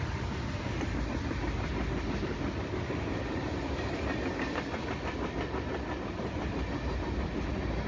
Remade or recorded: recorded